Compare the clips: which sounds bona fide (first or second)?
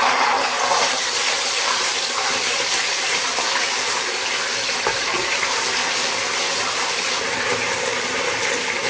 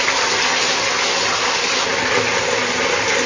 second